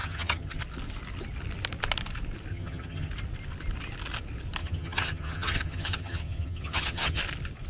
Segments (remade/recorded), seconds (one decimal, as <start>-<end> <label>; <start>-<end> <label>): 0.0-0.6 remade; 0.6-2.5 recorded; 2.5-3.1 remade; 3.1-4.6 recorded; 4.6-7.2 remade; 7.2-7.7 recorded